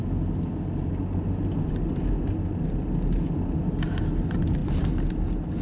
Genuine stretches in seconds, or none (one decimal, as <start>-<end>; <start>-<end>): 0.0-5.6